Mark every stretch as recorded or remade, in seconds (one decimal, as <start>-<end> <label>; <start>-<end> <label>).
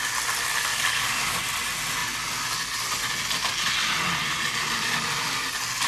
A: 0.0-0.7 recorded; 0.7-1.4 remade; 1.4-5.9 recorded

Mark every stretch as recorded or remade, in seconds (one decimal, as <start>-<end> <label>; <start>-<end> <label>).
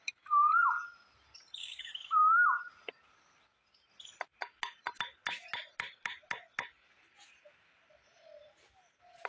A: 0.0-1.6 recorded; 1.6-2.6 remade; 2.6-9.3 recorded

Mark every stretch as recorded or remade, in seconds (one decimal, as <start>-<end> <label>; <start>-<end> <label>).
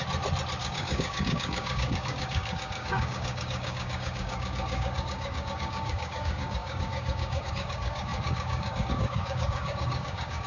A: 0.0-0.6 recorded; 0.6-10.5 remade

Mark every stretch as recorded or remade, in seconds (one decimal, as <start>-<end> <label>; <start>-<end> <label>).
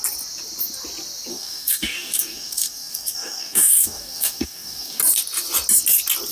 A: 0.0-1.3 recorded; 1.3-5.0 remade; 5.0-6.3 recorded